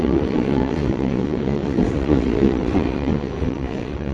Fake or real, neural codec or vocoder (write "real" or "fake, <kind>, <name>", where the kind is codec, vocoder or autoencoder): fake, vocoder, WaveNeXt